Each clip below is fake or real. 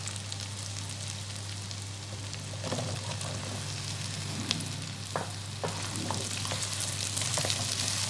real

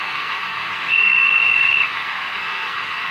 fake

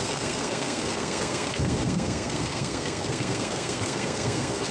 fake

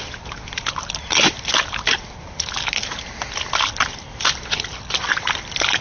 real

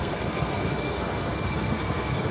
fake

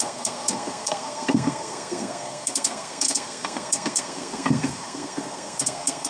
fake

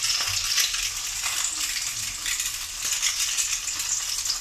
real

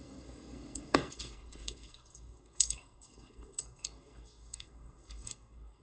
fake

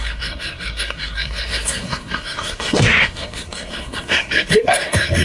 fake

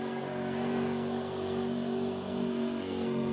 fake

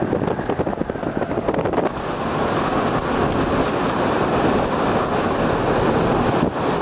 real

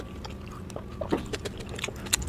real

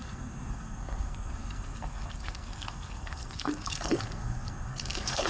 fake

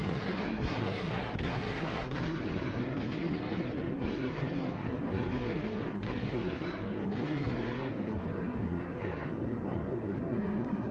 fake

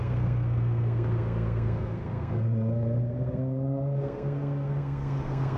fake